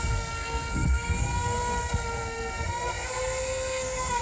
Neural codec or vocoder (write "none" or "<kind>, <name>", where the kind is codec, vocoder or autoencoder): codec, SNAC